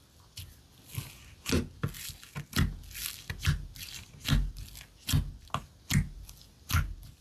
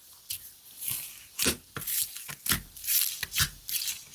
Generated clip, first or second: second